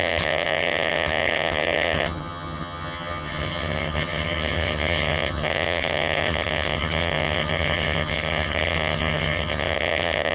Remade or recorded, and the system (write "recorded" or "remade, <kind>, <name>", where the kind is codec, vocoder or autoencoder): remade, vocoder, HiFi-GAN